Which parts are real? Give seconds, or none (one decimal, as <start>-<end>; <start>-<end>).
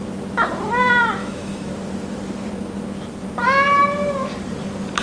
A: 0.0-1.2; 1.7-5.0